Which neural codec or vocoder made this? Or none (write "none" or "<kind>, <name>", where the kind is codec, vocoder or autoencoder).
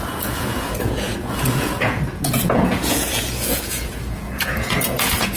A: vocoder, Vocos